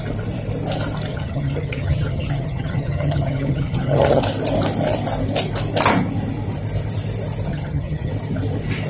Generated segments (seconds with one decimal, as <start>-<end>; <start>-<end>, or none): 1.1-4.2; 7.5-8.1